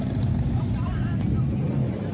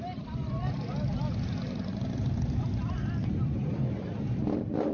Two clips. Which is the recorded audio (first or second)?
first